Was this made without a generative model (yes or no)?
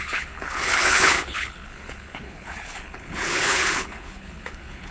no